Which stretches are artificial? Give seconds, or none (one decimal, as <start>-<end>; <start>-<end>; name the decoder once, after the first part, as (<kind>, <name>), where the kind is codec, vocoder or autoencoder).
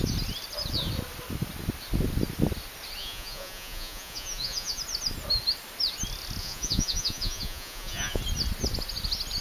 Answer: 3.0-4.8 (vocoder, Vocos); 6.4-8.2